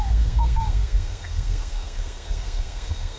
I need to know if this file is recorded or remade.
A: remade